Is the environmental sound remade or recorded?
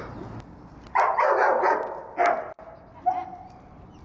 recorded